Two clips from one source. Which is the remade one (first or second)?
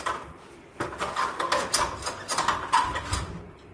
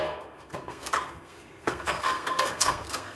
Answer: second